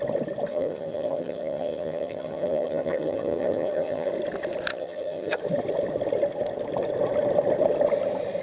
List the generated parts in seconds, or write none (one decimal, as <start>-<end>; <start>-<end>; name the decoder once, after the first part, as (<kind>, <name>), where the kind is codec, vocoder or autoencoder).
0.5-4.1 (vocoder, HiFi-GAN); 4.7-5.4